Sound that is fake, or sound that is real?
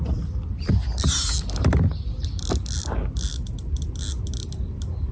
real